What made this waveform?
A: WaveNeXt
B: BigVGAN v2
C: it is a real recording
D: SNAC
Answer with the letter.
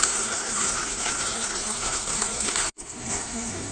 D